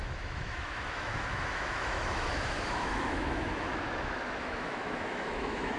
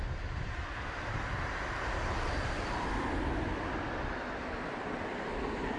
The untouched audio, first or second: second